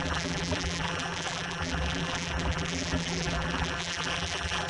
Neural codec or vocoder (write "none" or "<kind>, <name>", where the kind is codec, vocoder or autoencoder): vocoder, BigVGAN v2